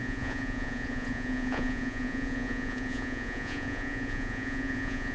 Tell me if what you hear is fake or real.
fake